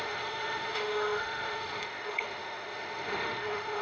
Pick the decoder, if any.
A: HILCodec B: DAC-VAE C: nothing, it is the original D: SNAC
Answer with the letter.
B